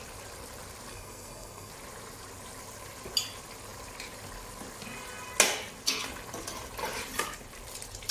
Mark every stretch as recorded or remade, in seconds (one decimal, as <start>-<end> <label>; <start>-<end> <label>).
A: 0.0-0.9 recorded; 0.9-1.7 remade; 1.7-8.1 recorded